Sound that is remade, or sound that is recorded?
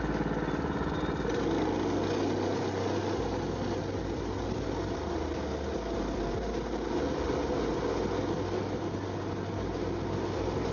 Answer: recorded